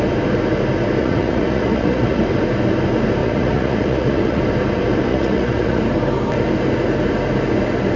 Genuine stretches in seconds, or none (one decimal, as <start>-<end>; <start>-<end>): 0.0-1.0; 2.2-3.2; 4.4-5.1; 5.8-8.0